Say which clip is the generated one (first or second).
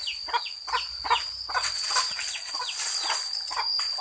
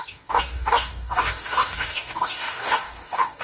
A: second